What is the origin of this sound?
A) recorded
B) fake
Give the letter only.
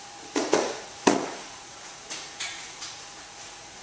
B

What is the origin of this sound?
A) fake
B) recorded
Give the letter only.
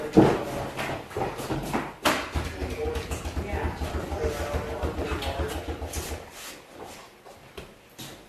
B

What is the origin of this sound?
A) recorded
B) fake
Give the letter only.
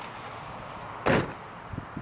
A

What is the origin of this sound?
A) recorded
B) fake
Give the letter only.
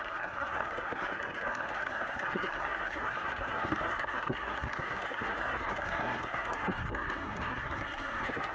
B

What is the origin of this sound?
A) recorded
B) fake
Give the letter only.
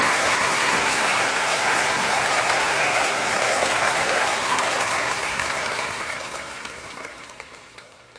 B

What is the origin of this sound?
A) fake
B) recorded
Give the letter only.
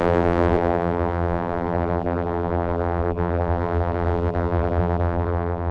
A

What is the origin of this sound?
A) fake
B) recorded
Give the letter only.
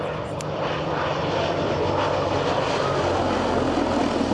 B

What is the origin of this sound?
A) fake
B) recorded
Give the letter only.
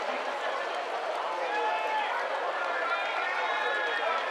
B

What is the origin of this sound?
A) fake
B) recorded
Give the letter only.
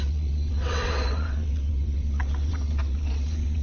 A